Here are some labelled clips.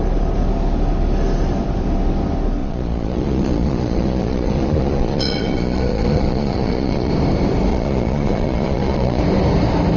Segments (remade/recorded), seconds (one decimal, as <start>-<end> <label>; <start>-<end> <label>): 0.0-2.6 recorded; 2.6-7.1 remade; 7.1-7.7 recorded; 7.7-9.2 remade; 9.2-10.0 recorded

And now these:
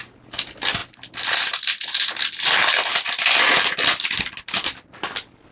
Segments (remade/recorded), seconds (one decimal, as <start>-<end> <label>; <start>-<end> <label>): 0.0-5.5 recorded

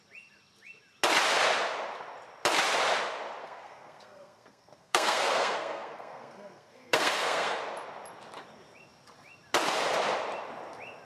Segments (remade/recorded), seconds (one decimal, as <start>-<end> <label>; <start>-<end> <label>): 0.0-3.4 recorded; 3.4-7.6 remade; 7.6-11.0 recorded